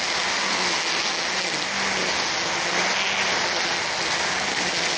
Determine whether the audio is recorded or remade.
recorded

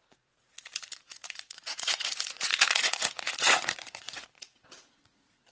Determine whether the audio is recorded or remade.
remade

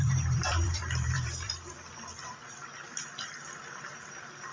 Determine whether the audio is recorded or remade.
remade